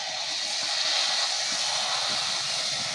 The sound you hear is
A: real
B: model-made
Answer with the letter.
A